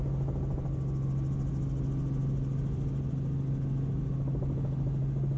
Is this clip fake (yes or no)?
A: no